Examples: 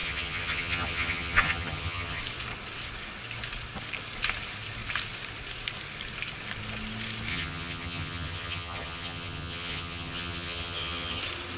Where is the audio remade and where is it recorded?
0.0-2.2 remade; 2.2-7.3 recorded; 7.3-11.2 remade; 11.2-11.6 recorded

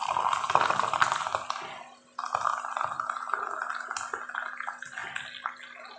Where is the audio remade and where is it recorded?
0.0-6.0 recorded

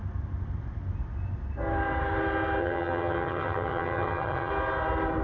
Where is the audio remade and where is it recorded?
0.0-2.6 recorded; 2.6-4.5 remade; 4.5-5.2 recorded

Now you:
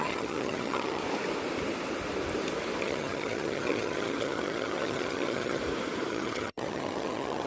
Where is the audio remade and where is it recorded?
0.0-1.0 remade; 1.0-2.8 recorded; 2.8-5.6 remade; 5.6-6.1 recorded; 6.1-7.5 remade

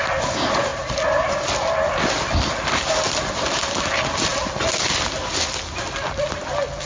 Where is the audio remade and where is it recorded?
0.0-6.9 recorded